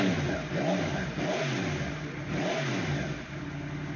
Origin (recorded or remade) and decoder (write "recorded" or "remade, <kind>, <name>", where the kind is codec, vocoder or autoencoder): recorded